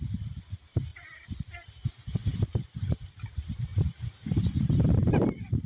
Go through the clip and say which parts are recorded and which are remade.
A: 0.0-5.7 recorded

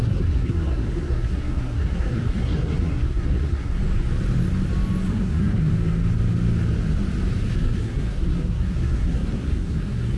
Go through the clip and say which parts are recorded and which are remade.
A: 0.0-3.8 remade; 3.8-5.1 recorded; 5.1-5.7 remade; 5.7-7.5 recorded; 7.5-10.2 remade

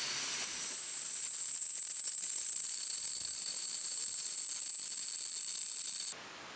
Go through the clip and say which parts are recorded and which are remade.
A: 0.0-0.4 recorded; 0.4-4.4 remade; 4.4-6.6 recorded

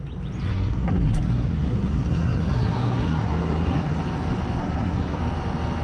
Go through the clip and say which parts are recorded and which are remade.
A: 0.0-0.5 recorded; 0.5-4.0 remade; 4.0-4.6 recorded; 4.6-5.2 remade; 5.2-5.8 recorded

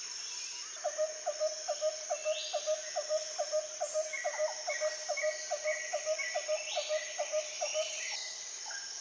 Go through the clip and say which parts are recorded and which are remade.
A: 0.0-9.0 recorded